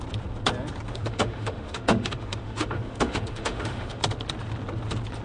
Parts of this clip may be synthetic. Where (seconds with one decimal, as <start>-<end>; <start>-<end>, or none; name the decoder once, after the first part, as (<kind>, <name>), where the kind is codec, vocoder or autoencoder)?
0.9-4.0 (autoencoder, DAC-VAE)